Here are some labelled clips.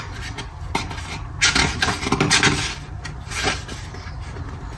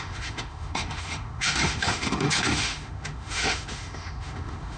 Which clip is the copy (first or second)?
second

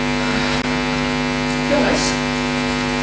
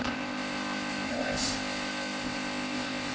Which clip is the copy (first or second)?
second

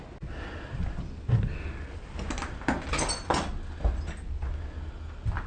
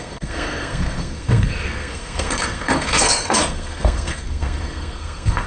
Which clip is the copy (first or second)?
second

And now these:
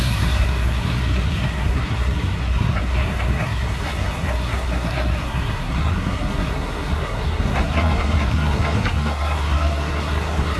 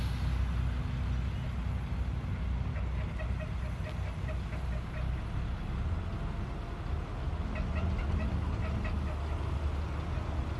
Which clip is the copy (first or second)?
first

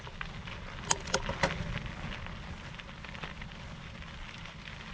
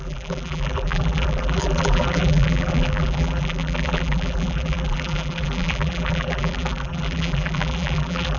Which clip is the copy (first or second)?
second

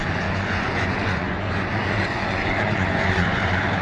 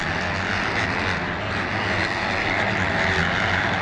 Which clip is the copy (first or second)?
first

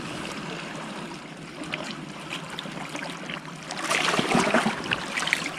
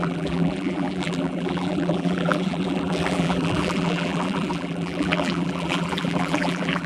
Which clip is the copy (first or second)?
second